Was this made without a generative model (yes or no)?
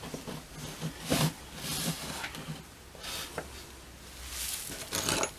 yes